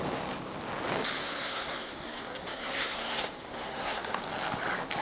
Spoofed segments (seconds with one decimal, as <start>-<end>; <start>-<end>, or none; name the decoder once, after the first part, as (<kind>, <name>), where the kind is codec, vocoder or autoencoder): 1.2-4.2 (codec, SNAC)